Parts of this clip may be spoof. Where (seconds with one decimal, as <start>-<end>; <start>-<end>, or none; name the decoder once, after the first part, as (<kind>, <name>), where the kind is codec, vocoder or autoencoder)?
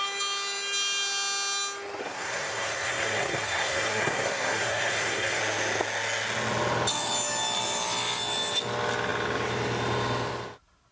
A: 2.0-5.4 (codec, SNAC)